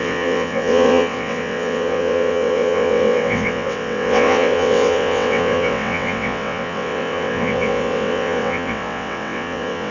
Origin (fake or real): fake